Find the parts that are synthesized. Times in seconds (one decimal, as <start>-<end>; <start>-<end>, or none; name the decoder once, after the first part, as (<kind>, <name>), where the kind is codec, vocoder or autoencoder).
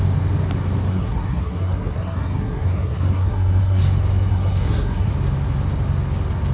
0.9-3.8 (codec, SNAC); 4.3-5.1